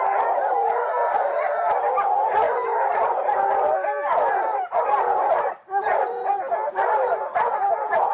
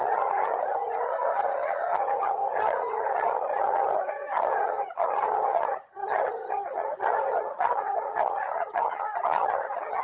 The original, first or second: first